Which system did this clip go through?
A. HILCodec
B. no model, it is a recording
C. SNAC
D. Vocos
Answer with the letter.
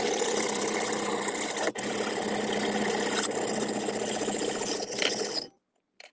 B